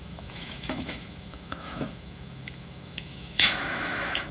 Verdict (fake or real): fake